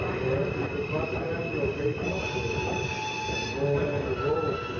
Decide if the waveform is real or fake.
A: real